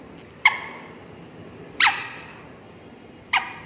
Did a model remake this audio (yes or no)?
yes